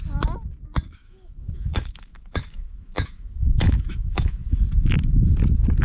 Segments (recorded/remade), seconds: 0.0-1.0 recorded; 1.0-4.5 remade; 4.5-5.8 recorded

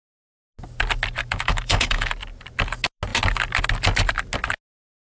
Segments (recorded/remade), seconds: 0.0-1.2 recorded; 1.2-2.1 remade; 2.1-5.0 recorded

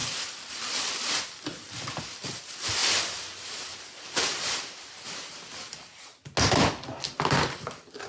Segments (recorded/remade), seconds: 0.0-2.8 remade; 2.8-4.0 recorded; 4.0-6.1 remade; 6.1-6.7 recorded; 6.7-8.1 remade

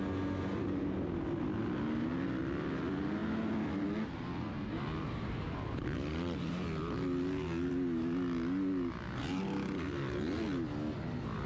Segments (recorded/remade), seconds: 0.0-11.5 recorded

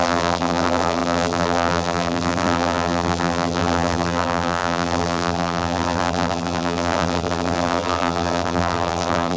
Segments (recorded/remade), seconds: 0.0-9.4 remade